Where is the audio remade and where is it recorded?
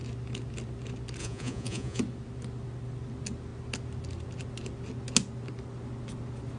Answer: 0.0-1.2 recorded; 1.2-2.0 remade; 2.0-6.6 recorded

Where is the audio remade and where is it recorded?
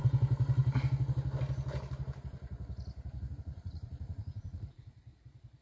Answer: 0.0-3.5 recorded; 3.5-4.8 remade; 4.8-5.6 recorded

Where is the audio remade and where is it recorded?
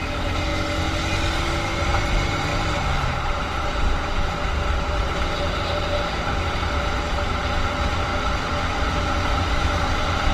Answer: 0.0-0.5 remade; 0.5-1.3 recorded; 1.3-8.1 remade; 8.1-9.1 recorded; 9.1-10.3 remade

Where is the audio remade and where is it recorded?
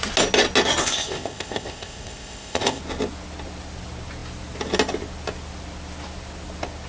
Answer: 0.0-0.8 recorded; 0.8-2.8 remade; 2.8-6.9 recorded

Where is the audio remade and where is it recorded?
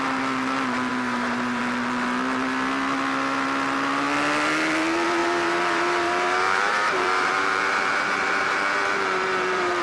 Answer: 0.0-0.9 recorded; 0.9-1.6 remade; 1.6-5.2 recorded; 5.2-9.8 remade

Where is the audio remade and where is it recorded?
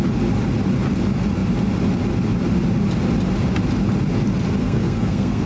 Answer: 0.0-4.6 recorded; 4.6-5.5 remade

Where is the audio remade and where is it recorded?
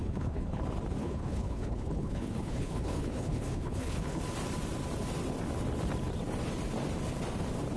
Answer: 0.0-0.6 remade; 0.6-1.0 recorded; 1.0-4.2 remade; 4.2-7.8 recorded